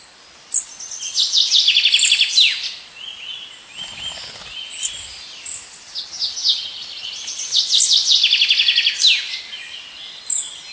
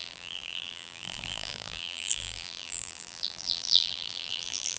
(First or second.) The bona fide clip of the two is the first